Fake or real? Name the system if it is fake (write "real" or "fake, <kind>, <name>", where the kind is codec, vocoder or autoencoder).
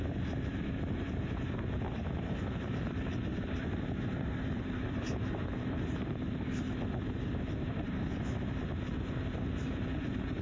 fake, vocoder, BigVGAN v2